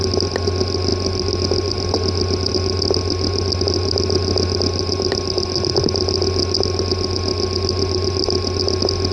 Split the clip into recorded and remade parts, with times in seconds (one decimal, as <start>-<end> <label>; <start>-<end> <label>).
0.0-9.1 recorded